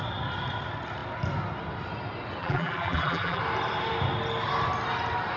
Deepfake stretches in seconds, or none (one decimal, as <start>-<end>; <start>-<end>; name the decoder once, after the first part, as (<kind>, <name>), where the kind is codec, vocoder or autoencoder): 2.4-3.4 (vocoder, BigVGAN v2)